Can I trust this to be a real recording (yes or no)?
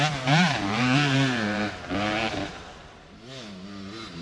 no